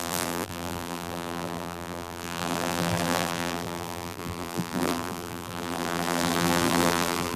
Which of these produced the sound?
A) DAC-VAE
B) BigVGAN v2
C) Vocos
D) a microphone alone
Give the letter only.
B